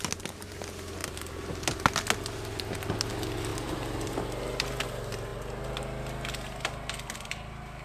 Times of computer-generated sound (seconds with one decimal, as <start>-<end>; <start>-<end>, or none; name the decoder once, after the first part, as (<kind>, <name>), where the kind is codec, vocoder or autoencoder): 3.5-4.2 (vocoder, BigVGAN v2)

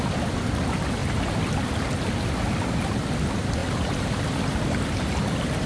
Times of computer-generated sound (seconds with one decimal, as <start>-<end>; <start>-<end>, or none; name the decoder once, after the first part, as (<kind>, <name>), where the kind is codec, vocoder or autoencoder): 3.6-4.8 (vocoder, BigVGAN v2)

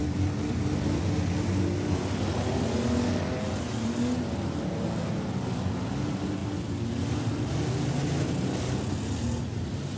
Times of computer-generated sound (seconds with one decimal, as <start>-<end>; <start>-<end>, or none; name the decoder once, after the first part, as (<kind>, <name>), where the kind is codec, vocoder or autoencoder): none

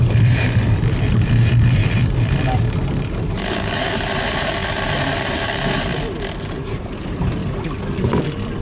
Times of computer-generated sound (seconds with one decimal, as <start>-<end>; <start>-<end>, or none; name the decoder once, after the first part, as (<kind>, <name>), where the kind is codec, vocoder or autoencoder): 0.0-5.9 (vocoder, BigVGAN v2); 6.5-7.4